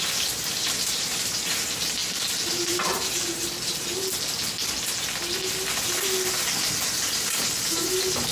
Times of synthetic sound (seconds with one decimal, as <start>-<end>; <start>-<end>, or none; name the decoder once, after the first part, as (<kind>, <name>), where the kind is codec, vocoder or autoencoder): 0.0-2.0 (vocoder, BigVGAN v2); 2.5-3.9; 7.1-8.3